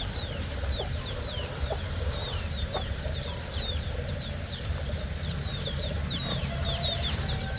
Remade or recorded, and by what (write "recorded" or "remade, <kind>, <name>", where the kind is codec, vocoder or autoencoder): remade, vocoder, BigVGAN v2